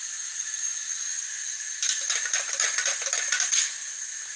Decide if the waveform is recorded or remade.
recorded